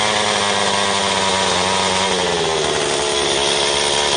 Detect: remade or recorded recorded